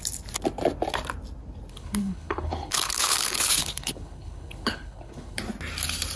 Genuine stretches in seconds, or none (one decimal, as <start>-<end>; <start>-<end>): 0.0-1.7; 5.4-6.2